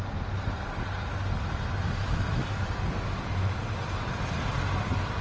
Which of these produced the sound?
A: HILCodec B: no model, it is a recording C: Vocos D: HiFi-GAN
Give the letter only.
B